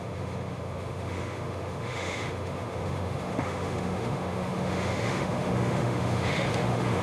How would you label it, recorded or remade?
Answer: remade